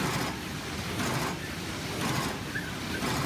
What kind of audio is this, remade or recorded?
recorded